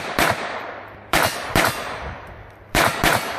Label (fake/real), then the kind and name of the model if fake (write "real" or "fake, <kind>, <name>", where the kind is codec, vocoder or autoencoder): fake, vocoder, BigVGAN v2